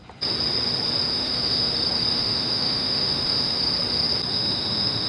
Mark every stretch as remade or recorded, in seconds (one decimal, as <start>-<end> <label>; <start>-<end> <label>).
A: 0.0-1.1 recorded; 1.1-1.7 remade; 1.7-2.1 recorded; 2.1-3.6 remade; 3.6-4.3 recorded; 4.3-5.1 remade